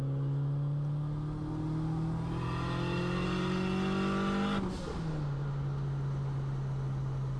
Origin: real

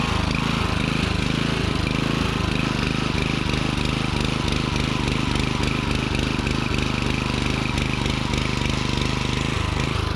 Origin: real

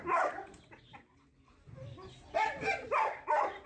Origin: real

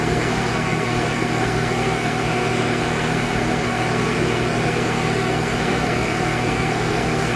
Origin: fake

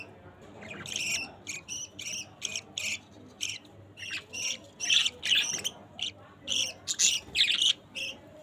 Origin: real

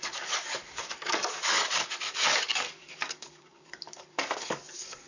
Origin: fake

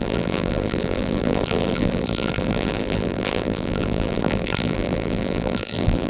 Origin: fake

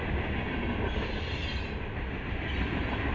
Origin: real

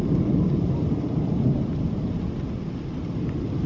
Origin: real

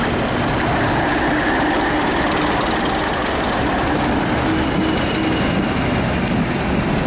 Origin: real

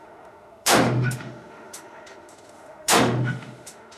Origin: fake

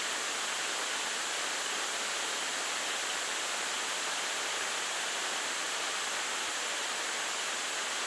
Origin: real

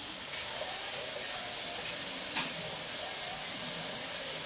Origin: real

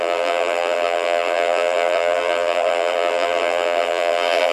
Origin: fake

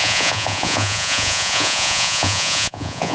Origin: fake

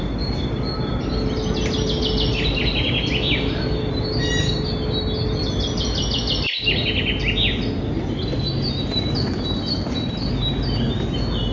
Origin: real